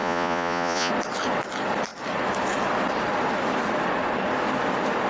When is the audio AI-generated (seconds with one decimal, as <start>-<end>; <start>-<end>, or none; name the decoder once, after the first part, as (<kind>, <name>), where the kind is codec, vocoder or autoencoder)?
0.0-0.9 (vocoder, Vocos)